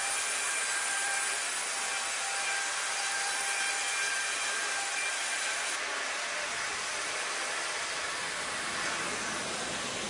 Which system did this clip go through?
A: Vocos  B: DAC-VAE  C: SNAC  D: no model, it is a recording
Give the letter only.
D